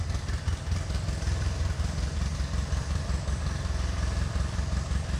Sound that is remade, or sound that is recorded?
remade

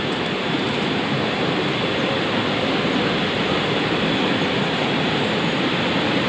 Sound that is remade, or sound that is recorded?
recorded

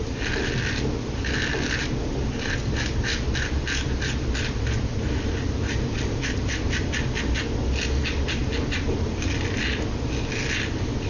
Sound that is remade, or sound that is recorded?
recorded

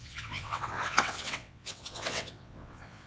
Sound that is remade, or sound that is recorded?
remade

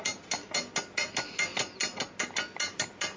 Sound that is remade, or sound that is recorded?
recorded